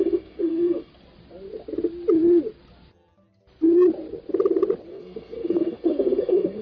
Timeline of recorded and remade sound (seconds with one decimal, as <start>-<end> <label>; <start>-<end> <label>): 0.0-0.9 remade; 0.9-4.9 recorded; 4.9-6.6 remade